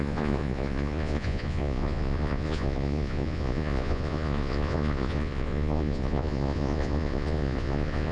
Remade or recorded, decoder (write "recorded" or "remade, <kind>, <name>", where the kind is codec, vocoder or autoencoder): remade, vocoder, Vocos